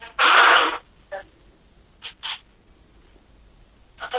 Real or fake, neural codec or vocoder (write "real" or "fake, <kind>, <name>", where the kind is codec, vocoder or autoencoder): real